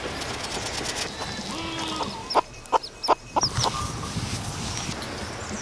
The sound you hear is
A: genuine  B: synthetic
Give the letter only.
A